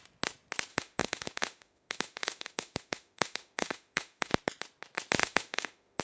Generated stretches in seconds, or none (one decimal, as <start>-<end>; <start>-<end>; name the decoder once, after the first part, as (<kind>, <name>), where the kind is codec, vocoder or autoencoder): 0.7-4.3 (autoencoder, DAC-VAE); 5.2-6.0